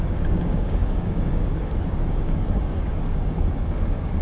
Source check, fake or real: fake